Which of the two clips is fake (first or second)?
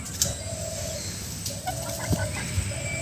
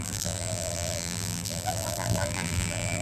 second